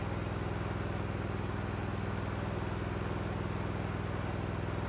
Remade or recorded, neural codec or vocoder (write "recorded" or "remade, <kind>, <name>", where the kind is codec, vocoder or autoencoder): recorded